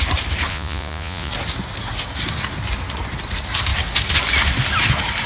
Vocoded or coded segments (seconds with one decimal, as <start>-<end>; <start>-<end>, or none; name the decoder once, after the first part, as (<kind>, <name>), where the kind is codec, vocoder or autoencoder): 0.5-1.3 (vocoder, Vocos)